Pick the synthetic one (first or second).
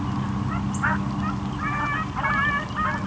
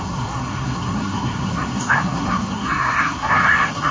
second